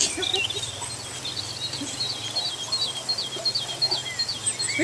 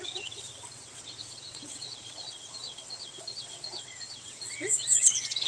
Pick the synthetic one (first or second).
second